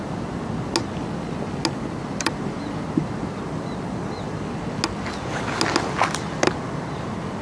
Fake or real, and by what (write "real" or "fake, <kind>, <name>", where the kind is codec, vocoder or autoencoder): real